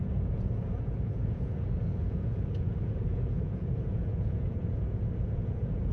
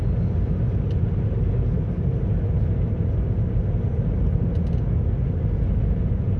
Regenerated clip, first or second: first